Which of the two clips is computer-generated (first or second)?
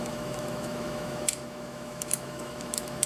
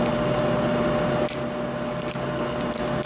first